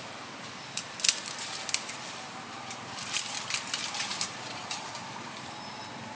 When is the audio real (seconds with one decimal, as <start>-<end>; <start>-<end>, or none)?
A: 0.0-4.1; 4.9-6.2